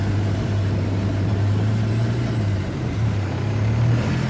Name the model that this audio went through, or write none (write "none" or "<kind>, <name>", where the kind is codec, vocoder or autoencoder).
vocoder, BigVGAN v2